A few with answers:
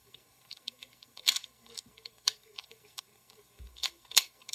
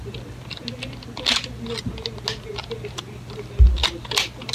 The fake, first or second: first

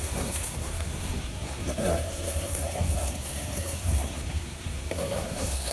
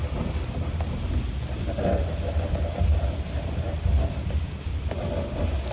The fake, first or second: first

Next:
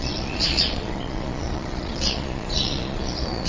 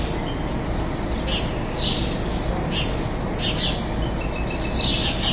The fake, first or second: first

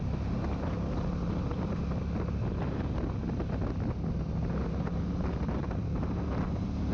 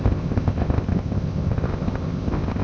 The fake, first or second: second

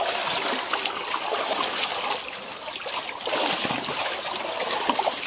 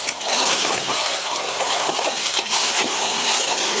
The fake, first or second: second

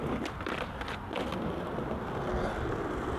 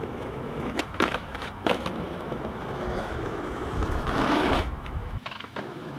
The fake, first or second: second